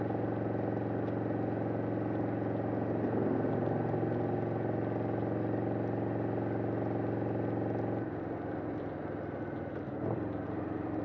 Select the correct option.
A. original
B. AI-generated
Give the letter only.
A